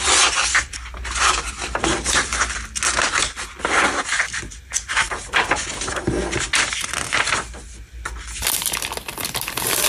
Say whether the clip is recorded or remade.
recorded